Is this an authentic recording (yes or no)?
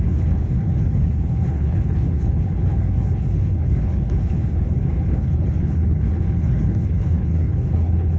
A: no